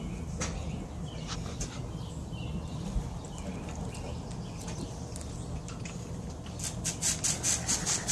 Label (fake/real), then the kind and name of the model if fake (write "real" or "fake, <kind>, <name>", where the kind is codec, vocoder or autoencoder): real